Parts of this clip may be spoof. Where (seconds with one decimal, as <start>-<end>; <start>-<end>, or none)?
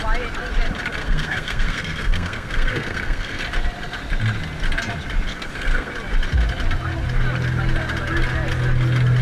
1.0-3.4; 5.3-5.9